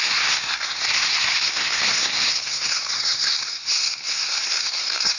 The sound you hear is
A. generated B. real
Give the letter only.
A